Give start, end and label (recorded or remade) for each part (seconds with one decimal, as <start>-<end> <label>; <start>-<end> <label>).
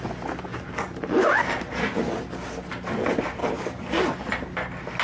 0.0-0.5 recorded; 0.5-1.6 remade; 1.6-3.4 recorded; 3.4-4.2 remade; 4.2-5.0 recorded